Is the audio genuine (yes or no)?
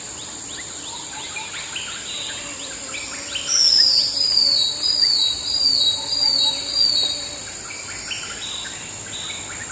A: yes